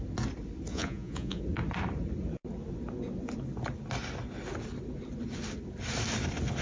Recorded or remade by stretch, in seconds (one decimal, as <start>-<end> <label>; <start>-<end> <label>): 0.0-0.7 recorded; 0.7-1.4 remade; 1.4-6.6 recorded